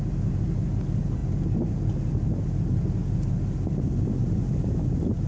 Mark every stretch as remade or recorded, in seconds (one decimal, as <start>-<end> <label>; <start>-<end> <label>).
0.0-5.3 recorded